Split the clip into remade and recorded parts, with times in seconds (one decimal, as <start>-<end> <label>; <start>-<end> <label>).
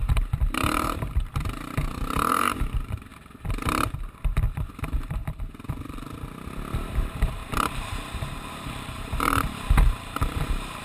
0.0-3.1 remade; 3.1-4.7 recorded; 4.7-5.2 remade; 5.2-6.9 recorded; 6.9-10.8 remade